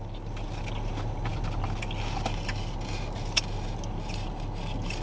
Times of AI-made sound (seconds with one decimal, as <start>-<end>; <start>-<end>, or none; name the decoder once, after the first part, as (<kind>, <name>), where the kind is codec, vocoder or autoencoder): none